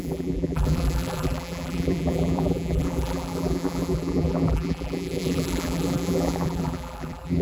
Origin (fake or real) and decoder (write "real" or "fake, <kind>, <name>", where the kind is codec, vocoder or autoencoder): fake, vocoder, BigVGAN v2